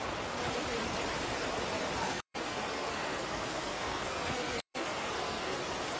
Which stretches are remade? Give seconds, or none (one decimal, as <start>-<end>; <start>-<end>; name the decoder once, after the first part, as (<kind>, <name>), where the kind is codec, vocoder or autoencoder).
2.0-5.6 (codec, SNAC)